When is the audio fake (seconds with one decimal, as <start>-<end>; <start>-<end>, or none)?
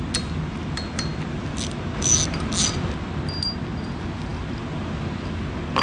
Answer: none